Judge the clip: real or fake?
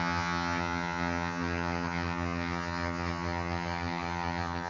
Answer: fake